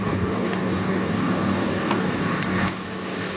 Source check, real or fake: fake